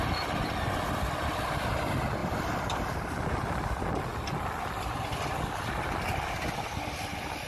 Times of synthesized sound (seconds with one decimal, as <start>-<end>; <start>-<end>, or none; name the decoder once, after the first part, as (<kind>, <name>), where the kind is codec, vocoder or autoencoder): none